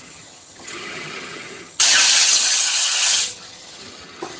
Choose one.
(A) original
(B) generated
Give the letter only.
B